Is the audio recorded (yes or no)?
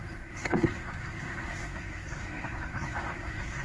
no